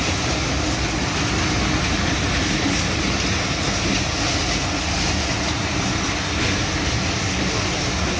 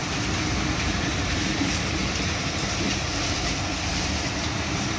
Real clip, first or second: first